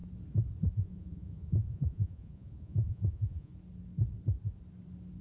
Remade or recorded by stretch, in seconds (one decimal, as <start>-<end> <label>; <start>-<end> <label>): 0.0-0.7 recorded; 0.7-3.5 remade; 3.5-5.2 recorded